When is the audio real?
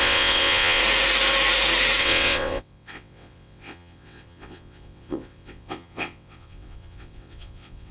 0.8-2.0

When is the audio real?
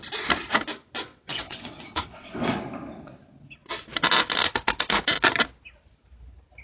0.0-1.1; 2.6-6.6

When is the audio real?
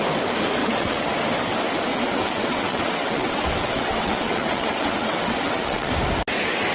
0.0-0.6; 1.1-1.9; 5.9-6.7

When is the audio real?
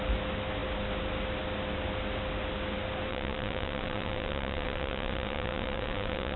0.0-3.1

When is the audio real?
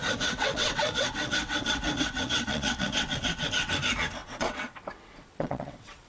3.7-4.2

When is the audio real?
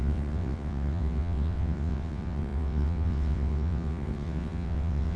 none